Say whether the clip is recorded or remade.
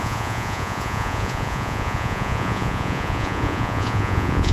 remade